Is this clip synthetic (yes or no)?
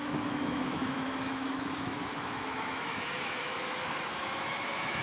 yes